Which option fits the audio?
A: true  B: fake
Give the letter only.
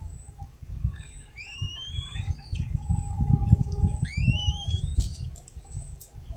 B